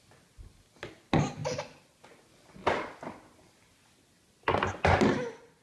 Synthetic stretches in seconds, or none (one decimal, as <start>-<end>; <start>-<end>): none